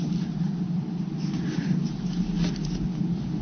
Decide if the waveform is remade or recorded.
recorded